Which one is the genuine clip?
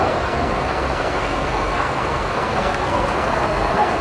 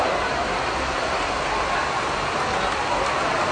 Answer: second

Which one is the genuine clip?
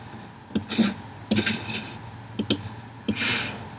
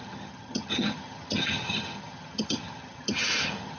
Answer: first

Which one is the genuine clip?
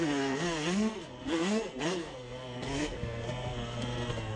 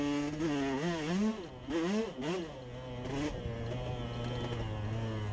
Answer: second